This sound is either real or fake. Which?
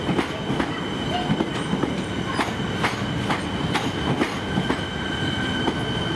real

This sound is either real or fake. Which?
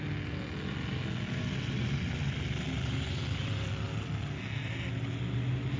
real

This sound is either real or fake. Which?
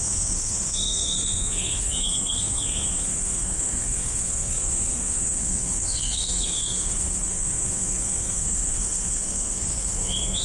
fake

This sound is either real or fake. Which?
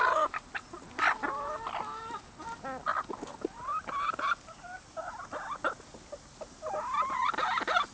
real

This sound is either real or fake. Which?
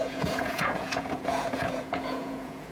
fake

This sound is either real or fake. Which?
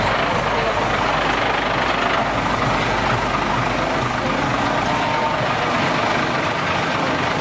real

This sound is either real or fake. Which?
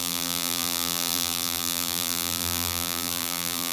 fake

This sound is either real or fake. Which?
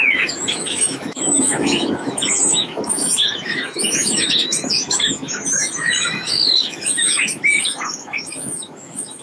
fake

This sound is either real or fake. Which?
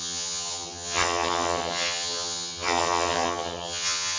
fake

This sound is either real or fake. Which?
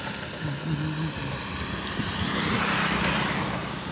real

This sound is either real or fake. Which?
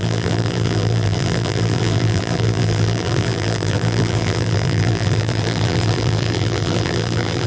fake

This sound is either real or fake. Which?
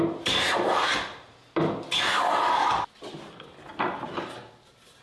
real